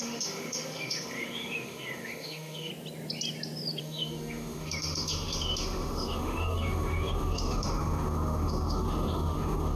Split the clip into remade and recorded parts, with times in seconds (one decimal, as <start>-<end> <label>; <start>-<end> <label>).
0.0-2.7 remade; 2.7-3.8 recorded; 3.8-9.8 remade